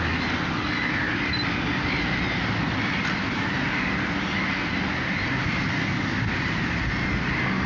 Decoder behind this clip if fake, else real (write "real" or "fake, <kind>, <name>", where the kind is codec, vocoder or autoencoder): real